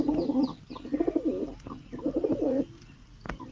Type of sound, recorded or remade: recorded